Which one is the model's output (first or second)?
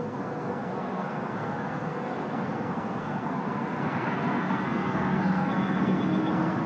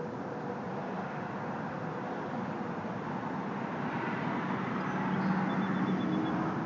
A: first